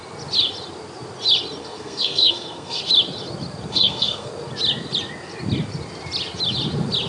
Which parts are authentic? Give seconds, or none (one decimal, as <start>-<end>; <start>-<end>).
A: 0.0-1.6; 2.8-3.7; 4.3-7.1